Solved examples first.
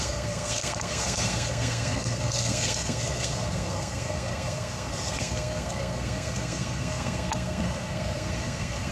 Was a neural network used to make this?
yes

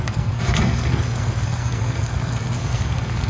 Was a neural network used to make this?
yes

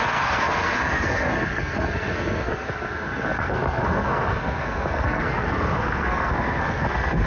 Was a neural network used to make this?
yes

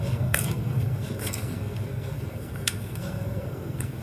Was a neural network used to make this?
yes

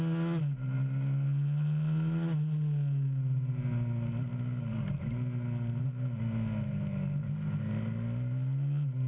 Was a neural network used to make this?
no